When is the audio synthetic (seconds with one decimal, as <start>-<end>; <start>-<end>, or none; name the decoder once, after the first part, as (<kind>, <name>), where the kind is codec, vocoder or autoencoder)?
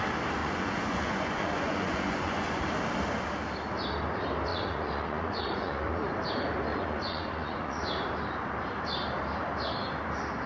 0.4-2.6 (vocoder, Vocos); 4.5-6.1; 6.7-7.8